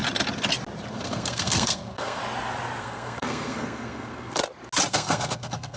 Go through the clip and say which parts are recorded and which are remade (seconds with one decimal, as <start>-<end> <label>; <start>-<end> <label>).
0.0-0.9 recorded; 0.9-2.2 remade; 2.2-2.8 recorded; 2.8-4.4 remade; 4.4-4.9 recorded; 4.9-5.8 remade